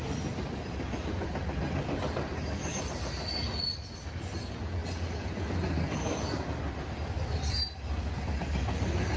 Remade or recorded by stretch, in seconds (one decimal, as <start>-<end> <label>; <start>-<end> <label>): 0.0-9.2 recorded